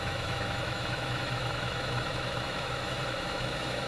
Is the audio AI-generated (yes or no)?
yes